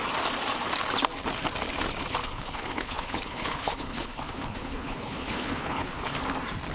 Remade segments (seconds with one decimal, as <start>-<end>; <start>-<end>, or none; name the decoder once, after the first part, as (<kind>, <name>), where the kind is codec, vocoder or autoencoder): 2.2-6.2 (codec, HILCodec)

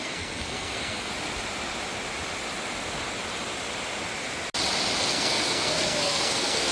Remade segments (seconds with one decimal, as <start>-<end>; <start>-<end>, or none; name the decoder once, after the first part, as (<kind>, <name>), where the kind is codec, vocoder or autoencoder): 0.0-1.1 (codec, SNAC); 5.1-6.7

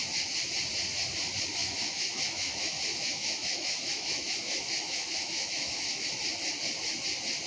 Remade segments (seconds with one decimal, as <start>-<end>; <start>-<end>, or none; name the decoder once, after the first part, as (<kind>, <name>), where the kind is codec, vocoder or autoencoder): 1.6-6.1 (autoencoder, DAC-VAE)

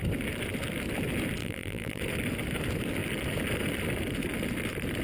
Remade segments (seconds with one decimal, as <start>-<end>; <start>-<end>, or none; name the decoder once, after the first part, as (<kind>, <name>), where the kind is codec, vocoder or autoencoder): 1.4-2.0 (vocoder, BigVGAN v2)

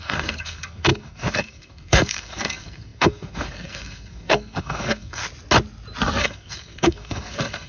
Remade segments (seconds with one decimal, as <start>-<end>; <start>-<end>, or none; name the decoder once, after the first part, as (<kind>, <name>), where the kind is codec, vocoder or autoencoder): 0.0-5.2 (codec, SNAC); 6.2-7.7

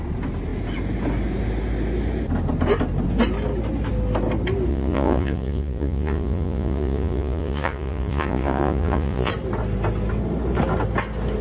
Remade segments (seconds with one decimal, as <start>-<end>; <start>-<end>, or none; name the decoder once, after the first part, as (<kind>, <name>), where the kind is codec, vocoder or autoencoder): 4.7-9.3 (vocoder, Vocos)

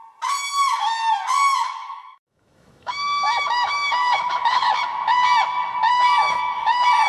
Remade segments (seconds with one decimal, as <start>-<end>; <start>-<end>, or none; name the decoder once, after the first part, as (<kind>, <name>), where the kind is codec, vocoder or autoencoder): 0.4-1.1 (autoencoder, DAC-VAE); 1.5-4.7; 5.9-7.1

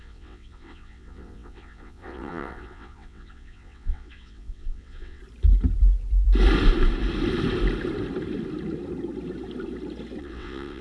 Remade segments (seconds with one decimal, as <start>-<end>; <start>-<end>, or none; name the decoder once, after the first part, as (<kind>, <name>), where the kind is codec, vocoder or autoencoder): 0.0-5.2 (vocoder, WaveNeXt); 10.2-10.8